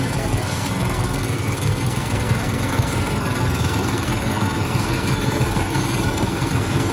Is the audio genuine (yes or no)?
no